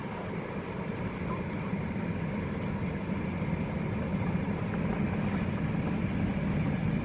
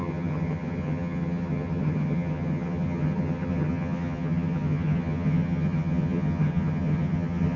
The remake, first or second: second